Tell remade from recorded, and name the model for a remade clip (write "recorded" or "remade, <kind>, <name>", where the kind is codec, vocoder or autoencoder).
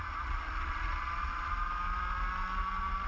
recorded